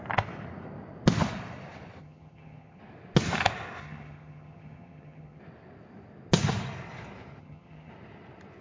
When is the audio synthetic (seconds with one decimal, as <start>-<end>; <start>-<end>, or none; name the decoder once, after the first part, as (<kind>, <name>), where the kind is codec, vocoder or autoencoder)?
2.0-2.8 (vocoder, HiFi-GAN); 3.8-5.4; 7.4-7.9